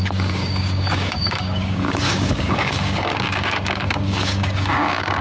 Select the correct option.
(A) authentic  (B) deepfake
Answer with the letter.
B